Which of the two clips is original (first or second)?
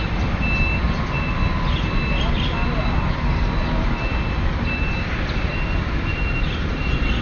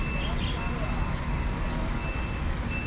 second